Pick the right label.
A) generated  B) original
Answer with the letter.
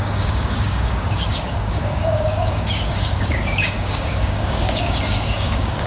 A